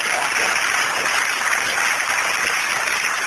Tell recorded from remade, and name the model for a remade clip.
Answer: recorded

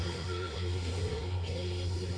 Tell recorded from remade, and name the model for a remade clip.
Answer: remade, codec, SNAC